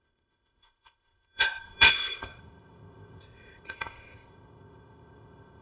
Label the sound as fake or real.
fake